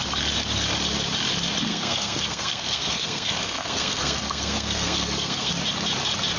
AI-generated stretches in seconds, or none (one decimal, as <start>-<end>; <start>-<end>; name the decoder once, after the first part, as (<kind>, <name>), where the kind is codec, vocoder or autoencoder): 1.7-5.5 (codec, SNAC)